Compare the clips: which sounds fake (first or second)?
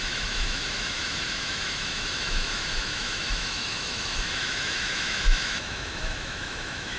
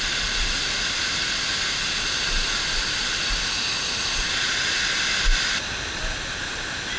first